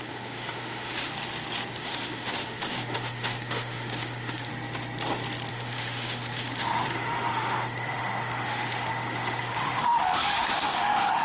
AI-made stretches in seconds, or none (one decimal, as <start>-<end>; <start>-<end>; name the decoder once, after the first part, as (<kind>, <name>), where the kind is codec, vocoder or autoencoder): 0.0-1.1 (autoencoder, DAC-VAE); 1.7-4.5; 5.5-11.2